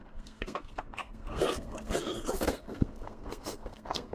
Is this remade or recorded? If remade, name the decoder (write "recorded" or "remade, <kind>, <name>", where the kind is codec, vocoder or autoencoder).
remade, codec, SNAC